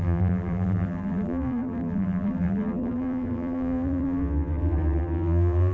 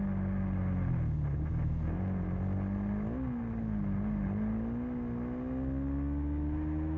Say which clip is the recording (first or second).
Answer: second